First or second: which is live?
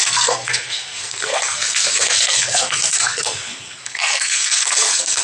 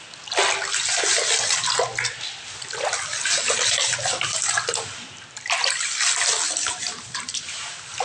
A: second